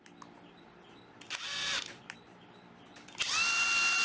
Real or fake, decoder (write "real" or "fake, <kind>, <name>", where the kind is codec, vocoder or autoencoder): real